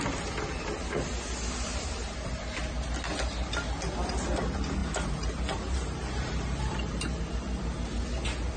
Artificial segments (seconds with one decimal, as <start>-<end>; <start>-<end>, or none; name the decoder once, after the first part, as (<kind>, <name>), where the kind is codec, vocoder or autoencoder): 4.8-7.2 (vocoder, BigVGAN v2)